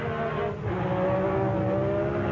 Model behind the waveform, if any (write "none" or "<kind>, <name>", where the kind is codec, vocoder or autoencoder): none